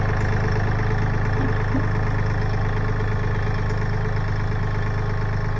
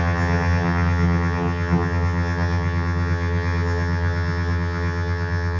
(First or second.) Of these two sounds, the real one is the first